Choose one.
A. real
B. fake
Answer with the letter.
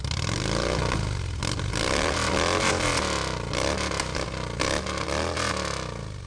A